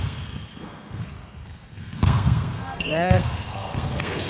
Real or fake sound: fake